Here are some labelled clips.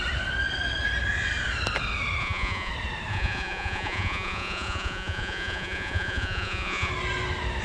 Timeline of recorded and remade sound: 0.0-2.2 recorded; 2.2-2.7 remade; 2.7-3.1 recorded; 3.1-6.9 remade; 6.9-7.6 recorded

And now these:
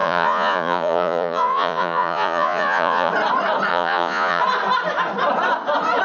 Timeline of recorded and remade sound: 0.0-3.1 remade; 3.1-3.7 recorded; 3.7-4.4 remade; 4.4-6.0 recorded

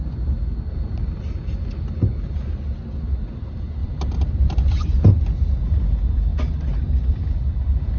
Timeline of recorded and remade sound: 0.0-0.7 recorded; 0.7-1.3 remade; 1.3-3.8 recorded; 3.8-4.8 remade; 4.8-8.0 recorded

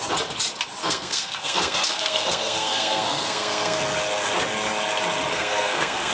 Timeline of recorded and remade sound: 0.0-0.8 recorded; 0.8-3.8 remade; 3.8-5.3 recorded; 5.3-6.1 remade

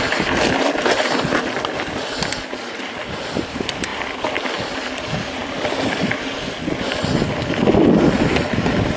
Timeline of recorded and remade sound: 0.0-9.0 recorded